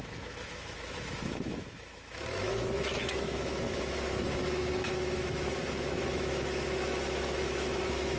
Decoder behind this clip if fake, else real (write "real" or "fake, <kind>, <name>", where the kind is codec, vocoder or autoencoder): fake, autoencoder, DAC-VAE